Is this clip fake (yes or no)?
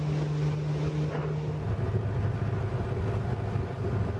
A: no